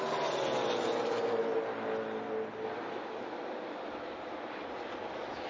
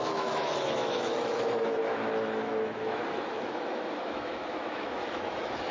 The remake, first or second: second